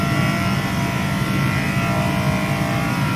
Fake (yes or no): no